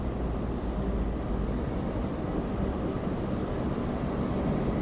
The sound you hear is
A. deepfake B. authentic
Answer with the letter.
B